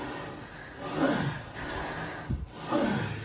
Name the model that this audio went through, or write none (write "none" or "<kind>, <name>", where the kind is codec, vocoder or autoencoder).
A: none